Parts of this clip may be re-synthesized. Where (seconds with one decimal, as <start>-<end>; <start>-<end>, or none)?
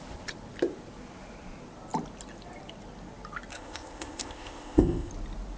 3.5-5.1